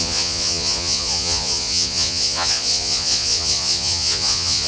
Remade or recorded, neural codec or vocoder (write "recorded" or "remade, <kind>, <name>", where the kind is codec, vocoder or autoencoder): remade, vocoder, Vocos